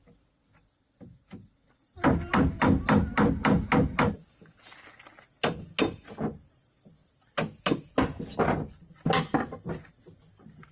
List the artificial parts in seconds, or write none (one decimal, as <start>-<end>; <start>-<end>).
none